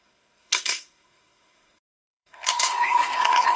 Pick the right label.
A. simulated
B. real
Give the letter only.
A